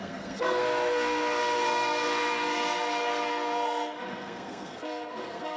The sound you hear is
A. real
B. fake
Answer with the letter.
B